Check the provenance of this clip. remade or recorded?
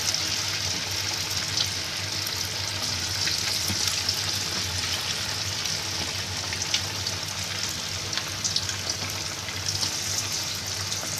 recorded